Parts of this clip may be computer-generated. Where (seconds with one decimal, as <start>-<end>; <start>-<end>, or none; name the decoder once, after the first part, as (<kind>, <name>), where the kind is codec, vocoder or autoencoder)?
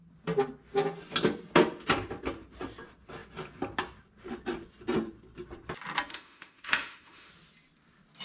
6.1-7.3 (autoencoder, DAC-VAE)